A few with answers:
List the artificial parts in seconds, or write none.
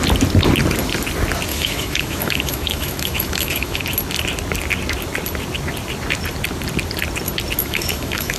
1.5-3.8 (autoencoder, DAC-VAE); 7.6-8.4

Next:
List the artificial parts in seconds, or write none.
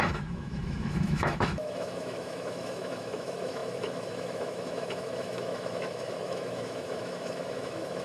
0.0-8.0 (autoencoder, DAC-VAE)